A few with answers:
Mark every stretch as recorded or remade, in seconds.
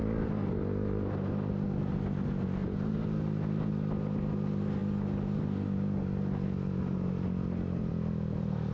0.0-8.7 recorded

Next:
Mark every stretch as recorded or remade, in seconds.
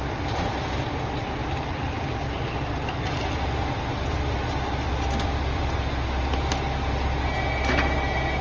0.0-8.4 recorded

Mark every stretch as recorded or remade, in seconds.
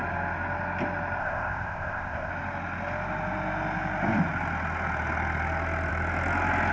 0.0-1.2 recorded; 1.2-2.3 remade; 2.3-6.7 recorded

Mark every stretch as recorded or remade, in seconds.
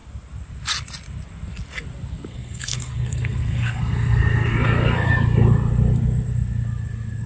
0.0-2.3 recorded; 2.3-5.1 remade; 5.1-7.3 recorded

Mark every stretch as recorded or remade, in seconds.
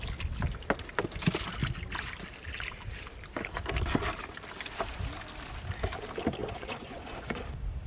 0.0-6.4 recorded; 6.4-7.4 remade; 7.4-7.9 recorded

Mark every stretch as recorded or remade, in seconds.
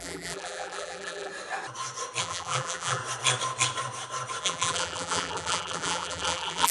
0.0-1.3 remade; 1.3-2.2 recorded; 2.2-3.0 remade; 3.0-4.4 recorded; 4.4-6.7 remade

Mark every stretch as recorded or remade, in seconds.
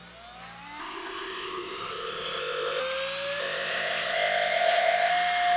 0.0-0.8 recorded; 0.8-2.8 remade; 2.8-3.4 recorded; 3.4-5.1 remade; 5.1-5.6 recorded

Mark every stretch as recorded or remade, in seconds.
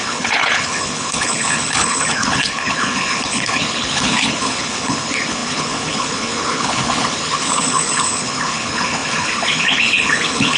0.0-10.6 remade